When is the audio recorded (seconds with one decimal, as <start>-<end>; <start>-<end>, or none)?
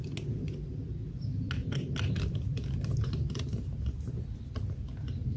0.0-5.4